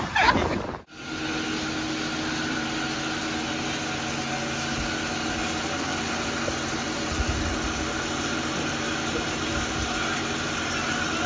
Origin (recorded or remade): recorded